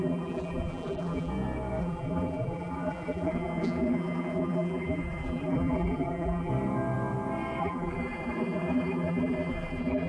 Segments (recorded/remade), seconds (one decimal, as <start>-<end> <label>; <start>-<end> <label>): 0.0-1.3 remade; 1.3-1.8 recorded; 1.8-6.5 remade; 6.5-7.6 recorded; 7.6-10.1 remade